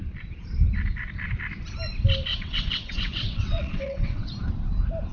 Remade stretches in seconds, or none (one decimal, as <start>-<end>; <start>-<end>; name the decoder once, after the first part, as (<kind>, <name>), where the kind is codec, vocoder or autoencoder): 2.3-4.3 (vocoder, WaveNeXt)